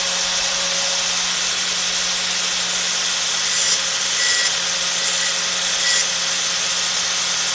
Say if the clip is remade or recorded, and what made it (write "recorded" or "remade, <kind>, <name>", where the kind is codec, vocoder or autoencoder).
recorded